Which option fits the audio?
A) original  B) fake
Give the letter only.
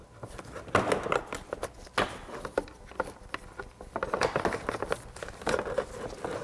A